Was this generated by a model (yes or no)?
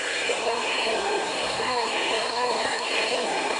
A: yes